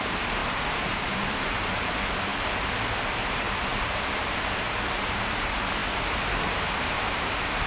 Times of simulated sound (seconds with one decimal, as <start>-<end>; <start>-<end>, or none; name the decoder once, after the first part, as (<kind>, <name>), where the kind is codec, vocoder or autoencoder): 0.0-2.3 (vocoder, BigVGAN v2); 3.0-5.8; 6.8-7.7